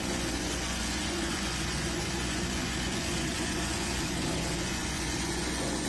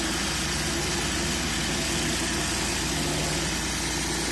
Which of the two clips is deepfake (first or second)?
first